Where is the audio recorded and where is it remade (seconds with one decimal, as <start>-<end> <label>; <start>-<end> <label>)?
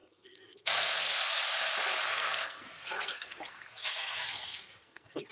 0.0-1.4 remade; 1.4-2.1 recorded; 2.1-5.3 remade